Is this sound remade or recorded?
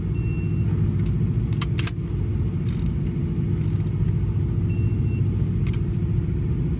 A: recorded